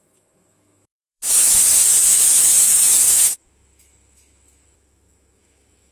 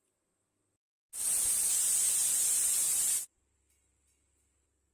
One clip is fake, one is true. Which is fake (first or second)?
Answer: first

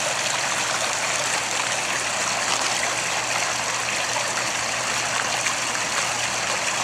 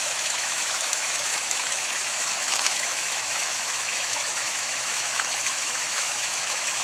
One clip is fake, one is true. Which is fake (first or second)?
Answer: second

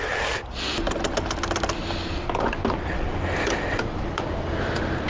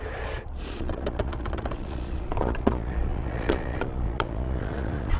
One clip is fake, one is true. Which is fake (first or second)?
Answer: second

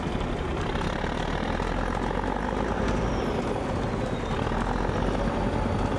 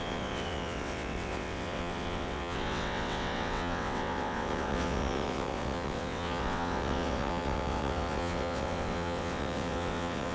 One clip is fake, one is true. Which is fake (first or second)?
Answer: second